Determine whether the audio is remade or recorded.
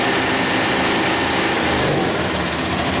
recorded